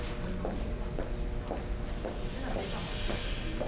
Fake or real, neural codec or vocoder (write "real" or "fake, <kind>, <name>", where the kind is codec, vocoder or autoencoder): real